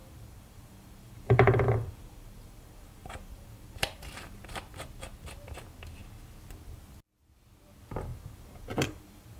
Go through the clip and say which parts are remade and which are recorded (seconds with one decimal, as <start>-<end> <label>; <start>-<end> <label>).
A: 0.0-4.4 remade; 4.4-8.1 recorded; 8.1-9.4 remade